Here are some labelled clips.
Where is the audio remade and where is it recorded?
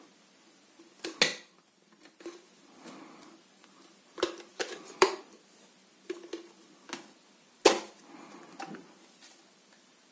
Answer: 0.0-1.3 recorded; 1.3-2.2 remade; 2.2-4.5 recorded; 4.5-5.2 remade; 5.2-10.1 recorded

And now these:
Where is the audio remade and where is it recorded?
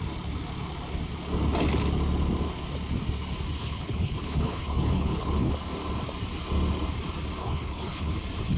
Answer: 0.0-3.6 recorded; 3.6-5.5 remade; 5.5-7.4 recorded; 7.4-8.1 remade; 8.1-8.6 recorded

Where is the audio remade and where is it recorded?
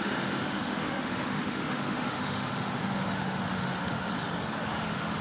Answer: 0.0-4.1 remade; 4.1-4.8 recorded; 4.8-5.2 remade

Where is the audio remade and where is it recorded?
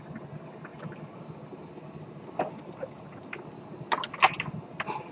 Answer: 0.0-5.1 recorded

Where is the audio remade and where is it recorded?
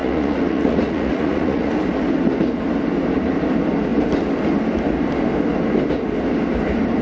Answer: 0.0-1.7 remade; 1.7-7.0 recorded